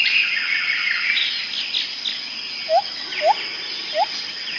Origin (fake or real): real